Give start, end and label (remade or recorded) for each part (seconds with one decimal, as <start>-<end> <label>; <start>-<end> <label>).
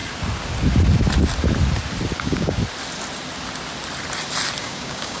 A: 0.0-2.2 recorded; 2.2-2.6 remade; 2.6-4.6 recorded; 4.6-5.2 remade